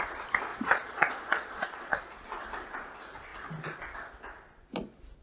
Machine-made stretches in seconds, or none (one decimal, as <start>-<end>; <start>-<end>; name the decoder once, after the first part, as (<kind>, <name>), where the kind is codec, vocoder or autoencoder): 0.5-2.0 (vocoder, Vocos)